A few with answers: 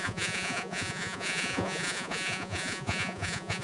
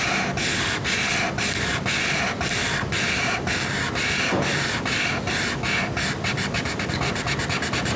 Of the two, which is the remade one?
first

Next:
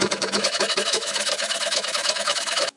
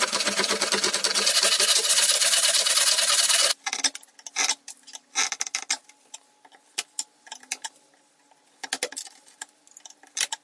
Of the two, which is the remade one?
first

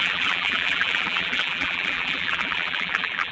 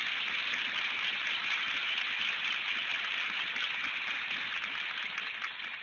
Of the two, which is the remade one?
first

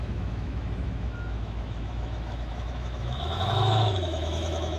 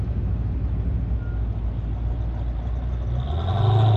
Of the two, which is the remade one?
first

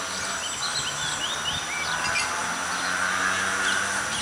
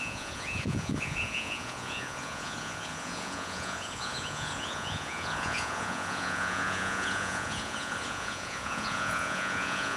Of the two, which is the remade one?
second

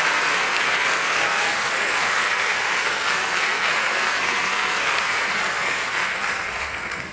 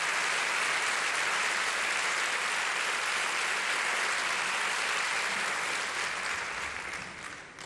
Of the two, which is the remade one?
first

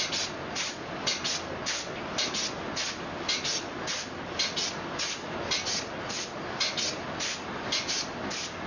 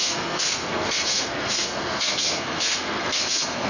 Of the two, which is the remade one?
second